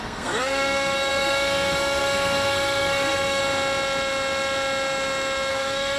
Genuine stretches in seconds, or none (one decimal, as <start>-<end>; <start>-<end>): 3.4-5.5